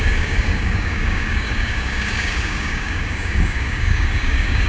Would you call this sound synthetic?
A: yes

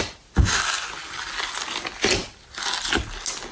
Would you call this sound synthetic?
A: no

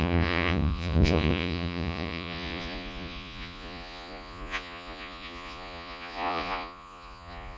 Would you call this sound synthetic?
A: yes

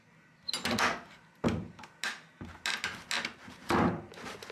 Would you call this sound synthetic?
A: no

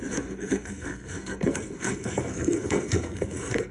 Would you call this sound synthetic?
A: yes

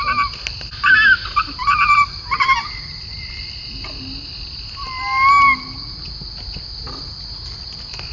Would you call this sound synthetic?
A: no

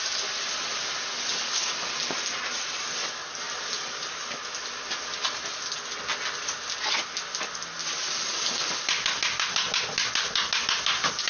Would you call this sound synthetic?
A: no